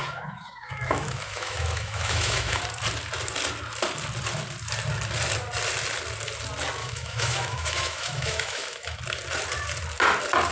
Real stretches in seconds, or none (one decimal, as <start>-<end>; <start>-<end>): 2.6-6.8; 9.0-10.5